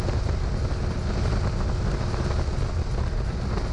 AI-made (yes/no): no